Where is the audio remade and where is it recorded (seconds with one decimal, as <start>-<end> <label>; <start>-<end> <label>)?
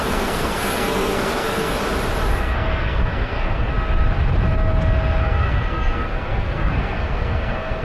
0.0-1.8 remade; 1.8-2.4 recorded; 2.4-3.7 remade; 3.7-5.2 recorded; 5.2-7.8 remade